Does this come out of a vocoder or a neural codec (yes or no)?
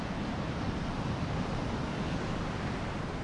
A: no